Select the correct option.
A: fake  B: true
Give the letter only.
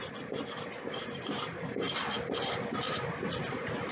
B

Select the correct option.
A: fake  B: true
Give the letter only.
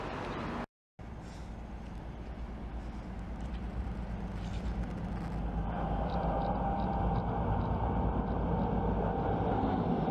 B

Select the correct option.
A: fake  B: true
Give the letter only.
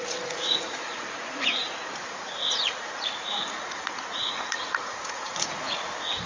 A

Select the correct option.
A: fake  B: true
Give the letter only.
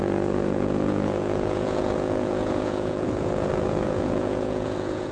A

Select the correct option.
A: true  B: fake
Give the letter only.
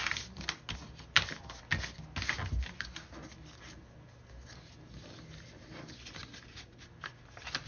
A